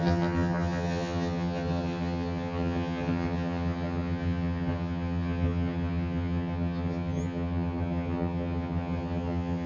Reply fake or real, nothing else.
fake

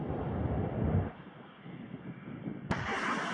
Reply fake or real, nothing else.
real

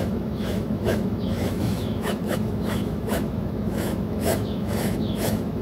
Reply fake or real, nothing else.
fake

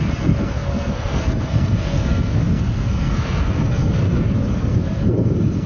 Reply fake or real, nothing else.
fake